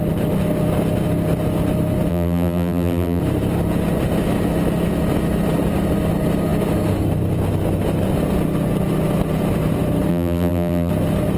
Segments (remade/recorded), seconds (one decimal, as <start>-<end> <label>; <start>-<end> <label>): 0.0-2.1 recorded; 2.1-3.2 remade; 3.2-10.1 recorded; 10.1-10.9 remade; 10.9-11.4 recorded